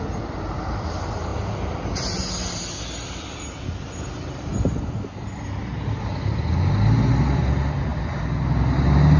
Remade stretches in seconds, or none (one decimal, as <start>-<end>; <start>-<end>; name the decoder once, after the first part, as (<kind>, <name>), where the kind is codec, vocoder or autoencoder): none